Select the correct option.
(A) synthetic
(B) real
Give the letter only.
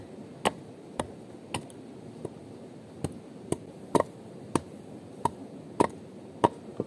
B